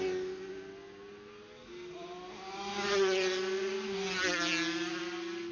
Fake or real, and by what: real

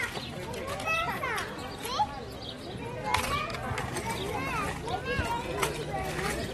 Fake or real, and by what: real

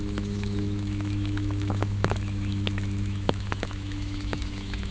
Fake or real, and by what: fake, autoencoder, DAC-VAE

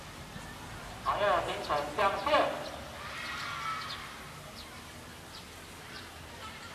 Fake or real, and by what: real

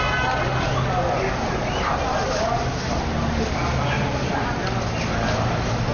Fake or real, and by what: real